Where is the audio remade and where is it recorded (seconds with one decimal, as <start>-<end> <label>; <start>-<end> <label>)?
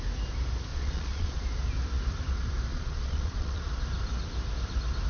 0.0-0.7 recorded; 0.7-1.4 remade; 1.4-2.7 recorded; 2.7-3.7 remade; 3.7-5.1 recorded